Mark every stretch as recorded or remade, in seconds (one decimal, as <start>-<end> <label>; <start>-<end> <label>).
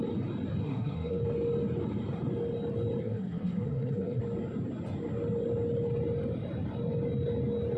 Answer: 0.0-0.6 recorded; 0.6-1.2 remade; 1.2-3.0 recorded; 3.0-4.2 remade; 4.2-7.8 recorded